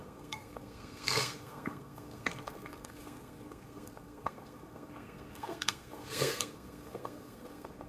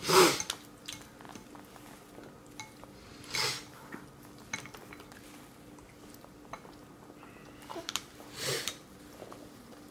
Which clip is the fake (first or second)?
first